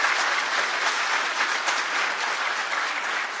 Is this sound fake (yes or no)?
no